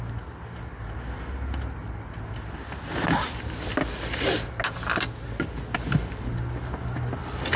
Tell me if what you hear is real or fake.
real